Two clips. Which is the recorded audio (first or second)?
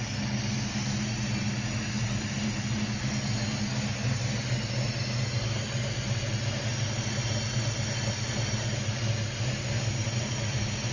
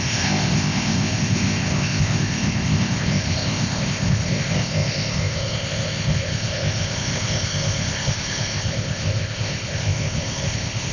first